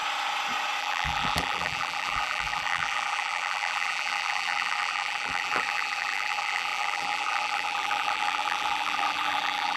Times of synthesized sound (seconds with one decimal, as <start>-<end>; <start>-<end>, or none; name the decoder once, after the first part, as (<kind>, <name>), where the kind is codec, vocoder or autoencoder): 0.8-9.8 (vocoder, BigVGAN v2)